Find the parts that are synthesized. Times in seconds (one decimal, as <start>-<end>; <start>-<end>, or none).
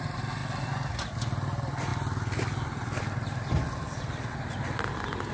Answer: none